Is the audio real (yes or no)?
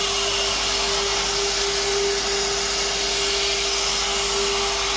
yes